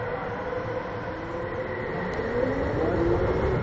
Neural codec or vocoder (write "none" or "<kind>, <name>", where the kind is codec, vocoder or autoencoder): none